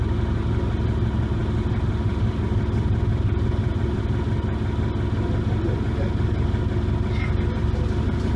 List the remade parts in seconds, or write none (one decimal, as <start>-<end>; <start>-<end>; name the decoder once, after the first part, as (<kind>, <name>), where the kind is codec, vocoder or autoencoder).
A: 1.4-4.1 (vocoder, BigVGAN v2)